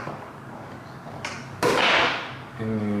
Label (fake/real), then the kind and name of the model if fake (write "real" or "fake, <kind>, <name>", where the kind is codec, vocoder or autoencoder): fake, codec, DAC